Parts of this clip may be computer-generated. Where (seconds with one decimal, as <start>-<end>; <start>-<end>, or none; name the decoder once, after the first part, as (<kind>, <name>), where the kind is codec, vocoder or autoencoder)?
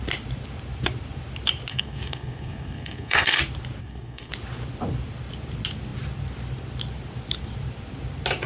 1.7-3.4 (codec, SNAC); 3.8-4.3